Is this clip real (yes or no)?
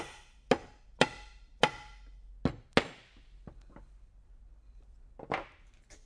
yes